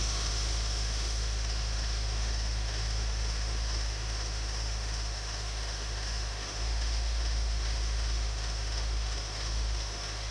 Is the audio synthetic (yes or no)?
yes